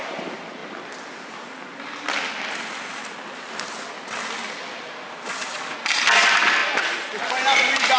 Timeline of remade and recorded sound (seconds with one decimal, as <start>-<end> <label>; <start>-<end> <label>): 0.0-8.0 recorded